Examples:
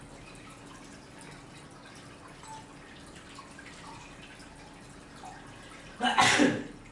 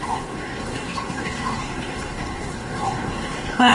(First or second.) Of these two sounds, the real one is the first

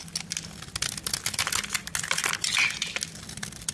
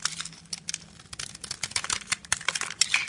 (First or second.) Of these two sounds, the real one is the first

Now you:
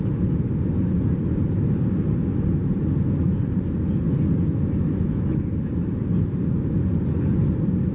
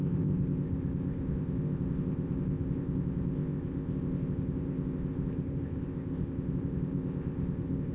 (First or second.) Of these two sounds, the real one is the first